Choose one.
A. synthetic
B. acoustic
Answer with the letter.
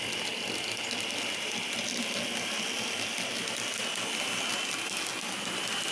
B